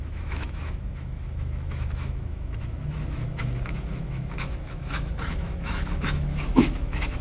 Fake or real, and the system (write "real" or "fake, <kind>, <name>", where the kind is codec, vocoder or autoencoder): fake, autoencoder, DAC-VAE